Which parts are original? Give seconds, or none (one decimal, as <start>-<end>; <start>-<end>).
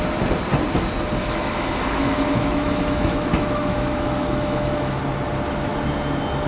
0.0-1.2; 5.0-6.5